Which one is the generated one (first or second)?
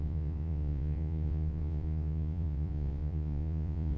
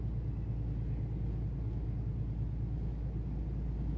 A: first